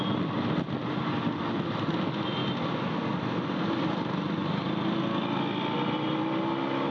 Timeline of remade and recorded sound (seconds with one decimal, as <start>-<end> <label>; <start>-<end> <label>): 0.0-6.9 recorded

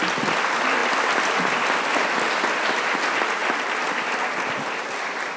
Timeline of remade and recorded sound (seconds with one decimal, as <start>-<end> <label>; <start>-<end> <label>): 0.0-5.4 recorded

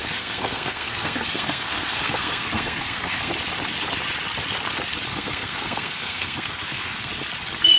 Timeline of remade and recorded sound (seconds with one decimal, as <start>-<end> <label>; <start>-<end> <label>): 0.0-3.3 remade; 3.3-5.1 recorded; 5.1-7.1 remade; 7.1-7.8 recorded